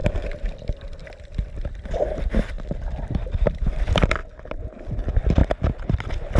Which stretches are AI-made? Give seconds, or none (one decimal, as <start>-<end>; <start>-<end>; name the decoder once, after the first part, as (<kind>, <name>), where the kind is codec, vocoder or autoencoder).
0.0-4.2 (vocoder, BigVGAN v2); 4.8-6.4